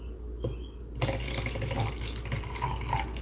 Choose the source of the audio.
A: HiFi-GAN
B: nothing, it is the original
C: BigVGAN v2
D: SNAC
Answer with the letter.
B